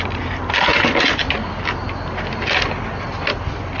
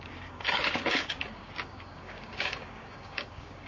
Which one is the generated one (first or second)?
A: second